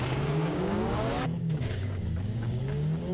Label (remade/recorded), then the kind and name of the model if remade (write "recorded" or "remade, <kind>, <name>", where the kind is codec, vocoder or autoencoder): remade, codec, DAC